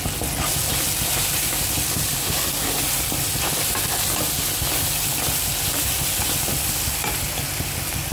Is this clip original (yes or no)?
yes